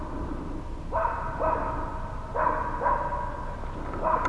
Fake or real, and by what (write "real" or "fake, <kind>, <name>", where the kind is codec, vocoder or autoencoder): real